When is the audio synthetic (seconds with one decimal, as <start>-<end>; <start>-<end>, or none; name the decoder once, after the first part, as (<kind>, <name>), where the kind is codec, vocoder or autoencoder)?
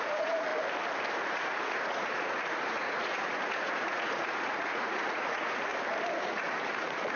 0.0-0.5 (vocoder, Vocos); 1.3-5.7; 6.2-7.2